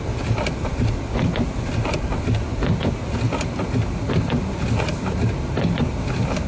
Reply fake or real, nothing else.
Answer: real